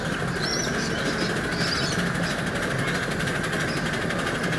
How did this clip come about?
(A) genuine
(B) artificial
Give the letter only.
A